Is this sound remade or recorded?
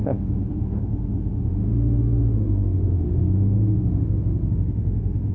remade